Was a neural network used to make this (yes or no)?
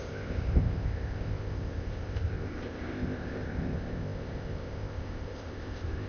yes